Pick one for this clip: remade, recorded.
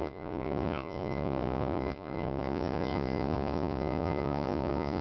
remade